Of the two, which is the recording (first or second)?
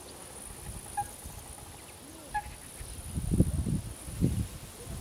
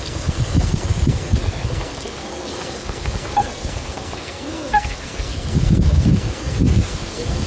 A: first